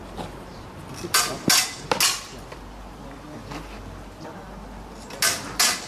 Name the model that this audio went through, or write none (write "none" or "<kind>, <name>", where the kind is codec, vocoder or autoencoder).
none